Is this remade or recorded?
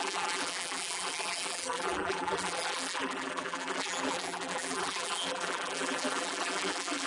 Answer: remade